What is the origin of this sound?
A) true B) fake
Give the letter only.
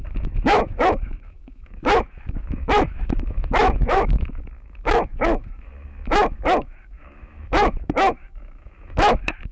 B